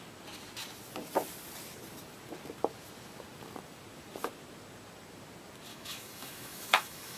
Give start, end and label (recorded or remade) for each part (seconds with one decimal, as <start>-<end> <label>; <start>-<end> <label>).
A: 0.0-5.7 recorded; 5.7-7.2 remade